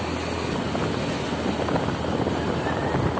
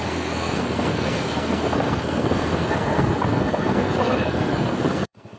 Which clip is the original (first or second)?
first